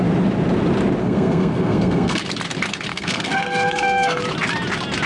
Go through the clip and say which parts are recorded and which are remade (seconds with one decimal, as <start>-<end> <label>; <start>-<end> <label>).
0.0-1.0 recorded; 1.0-2.2 remade; 2.2-2.9 recorded; 2.9-4.2 remade; 4.2-5.1 recorded